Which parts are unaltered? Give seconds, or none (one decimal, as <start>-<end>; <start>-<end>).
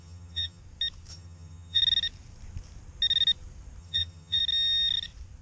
0.6-1.1; 1.8-3.8; 4.4-5.4